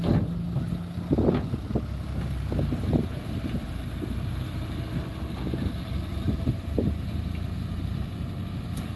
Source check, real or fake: real